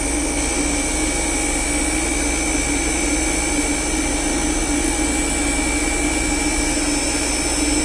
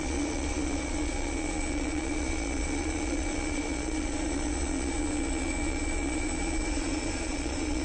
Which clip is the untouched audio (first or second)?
first